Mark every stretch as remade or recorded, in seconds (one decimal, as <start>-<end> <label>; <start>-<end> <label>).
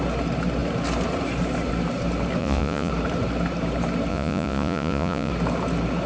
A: 0.0-2.4 recorded; 2.4-2.9 remade; 2.9-4.1 recorded; 4.1-5.3 remade; 5.3-6.1 recorded